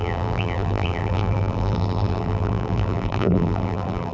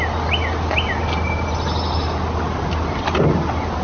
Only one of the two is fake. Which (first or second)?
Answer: first